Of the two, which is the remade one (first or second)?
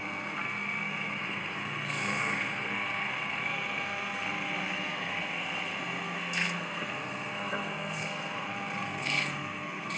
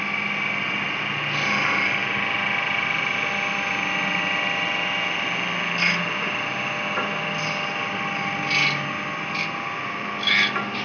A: first